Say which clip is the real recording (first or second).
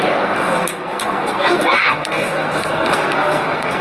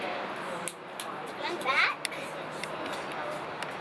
second